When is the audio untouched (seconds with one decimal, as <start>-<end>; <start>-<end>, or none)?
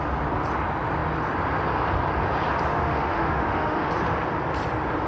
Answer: 0.0-2.7; 3.9-5.1